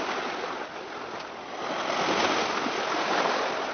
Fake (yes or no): no